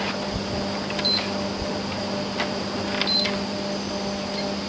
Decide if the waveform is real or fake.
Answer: fake